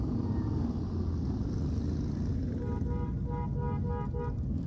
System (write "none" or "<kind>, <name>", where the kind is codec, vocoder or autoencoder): none